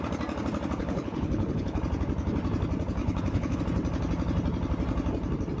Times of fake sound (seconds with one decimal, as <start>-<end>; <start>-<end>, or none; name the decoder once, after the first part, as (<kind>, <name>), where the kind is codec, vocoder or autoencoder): 0.8-1.8 (codec, HILCodec); 3.0-3.6